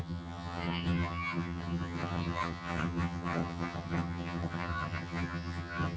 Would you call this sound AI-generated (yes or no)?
yes